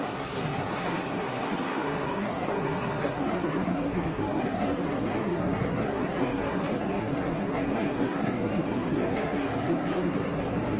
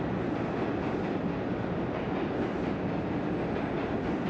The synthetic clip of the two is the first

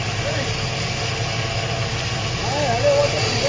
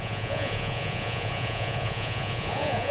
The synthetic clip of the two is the second